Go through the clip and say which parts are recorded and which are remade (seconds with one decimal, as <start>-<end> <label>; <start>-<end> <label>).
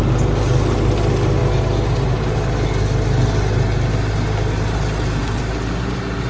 0.0-6.3 recorded